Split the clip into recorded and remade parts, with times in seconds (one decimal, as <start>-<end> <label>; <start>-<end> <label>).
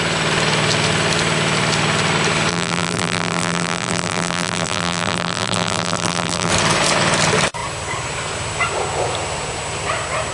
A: 0.0-2.5 recorded; 2.5-6.5 remade; 6.5-10.3 recorded